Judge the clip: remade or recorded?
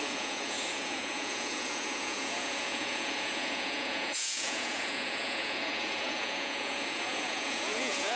remade